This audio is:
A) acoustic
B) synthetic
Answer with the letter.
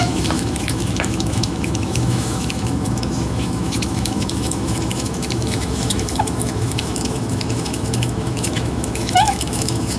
B